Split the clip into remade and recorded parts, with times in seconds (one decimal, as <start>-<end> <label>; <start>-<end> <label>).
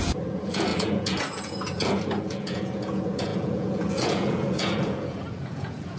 0.0-6.0 remade